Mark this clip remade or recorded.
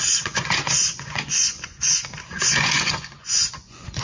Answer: remade